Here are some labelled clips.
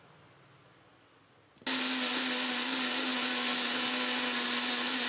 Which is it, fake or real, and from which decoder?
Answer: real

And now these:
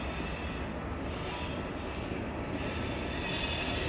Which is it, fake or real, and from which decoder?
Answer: real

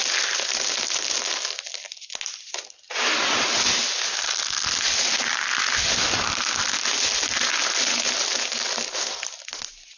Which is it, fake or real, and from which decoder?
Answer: real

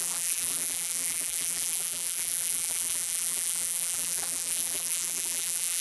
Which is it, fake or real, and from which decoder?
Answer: fake, vocoder, BigVGAN v2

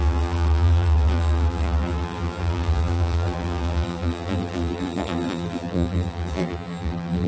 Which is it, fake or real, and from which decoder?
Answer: fake, vocoder, BigVGAN v2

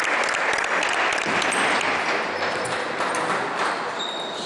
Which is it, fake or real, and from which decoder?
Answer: real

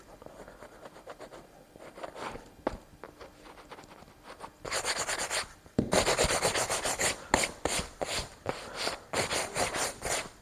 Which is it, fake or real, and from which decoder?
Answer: real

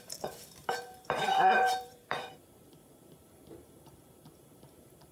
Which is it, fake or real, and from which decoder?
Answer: fake, vocoder, BigVGAN v2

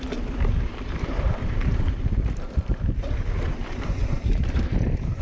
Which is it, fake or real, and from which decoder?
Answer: fake, vocoder, BigVGAN v2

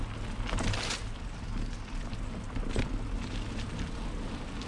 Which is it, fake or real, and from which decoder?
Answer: real